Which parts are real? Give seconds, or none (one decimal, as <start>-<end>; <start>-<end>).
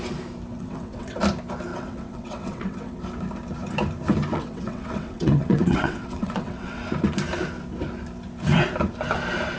0.0-0.5; 1.2-1.7; 3.0-4.3; 6.8-9.6